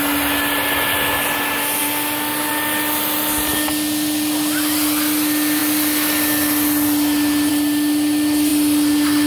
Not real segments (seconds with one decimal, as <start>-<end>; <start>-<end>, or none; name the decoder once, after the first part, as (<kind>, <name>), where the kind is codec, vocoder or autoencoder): none